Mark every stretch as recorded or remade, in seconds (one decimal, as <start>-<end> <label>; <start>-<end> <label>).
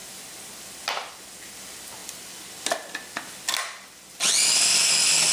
0.0-5.3 recorded